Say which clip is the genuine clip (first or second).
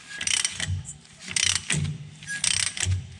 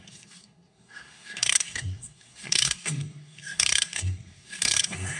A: first